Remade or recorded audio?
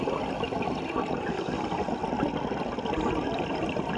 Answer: recorded